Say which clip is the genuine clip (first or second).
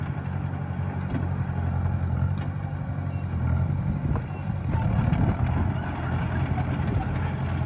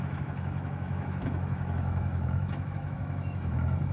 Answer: first